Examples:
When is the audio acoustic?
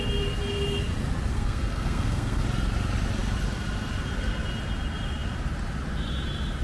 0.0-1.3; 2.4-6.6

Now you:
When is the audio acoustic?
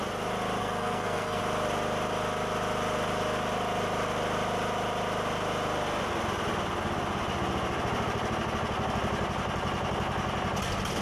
0.0-0.6; 1.4-11.0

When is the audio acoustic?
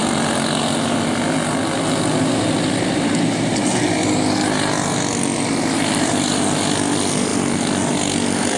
0.0-8.6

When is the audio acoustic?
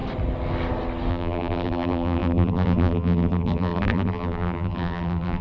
0.0-1.1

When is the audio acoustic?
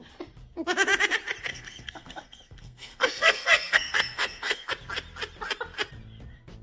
0.0-1.5; 4.7-6.6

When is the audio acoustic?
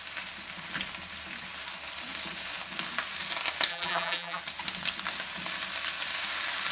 0.0-3.7; 4.4-6.7